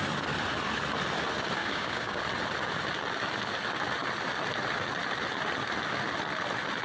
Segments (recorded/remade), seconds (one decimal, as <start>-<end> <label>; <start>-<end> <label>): 0.0-1.6 recorded; 1.6-2.2 remade; 2.2-6.8 recorded